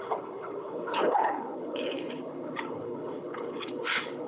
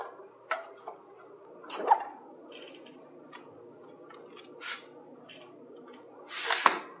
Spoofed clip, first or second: first